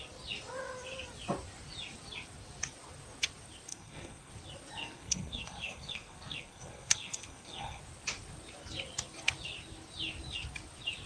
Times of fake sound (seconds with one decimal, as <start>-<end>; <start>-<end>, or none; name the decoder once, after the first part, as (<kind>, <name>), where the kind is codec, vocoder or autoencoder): 3.7-4.3 (codec, SNAC); 4.8-7.8